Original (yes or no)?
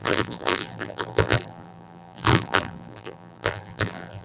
no